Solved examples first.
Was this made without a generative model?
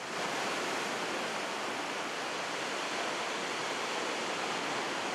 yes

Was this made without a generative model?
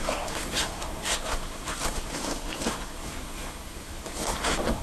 no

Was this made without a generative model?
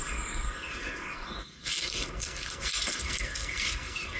no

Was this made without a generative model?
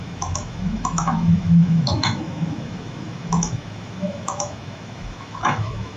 no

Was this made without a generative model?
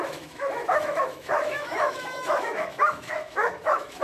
no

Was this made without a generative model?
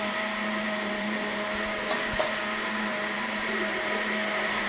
no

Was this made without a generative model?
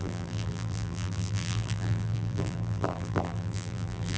no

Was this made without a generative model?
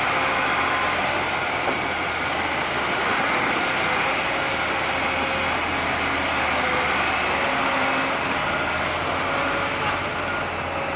yes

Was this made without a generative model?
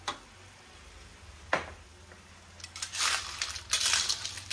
yes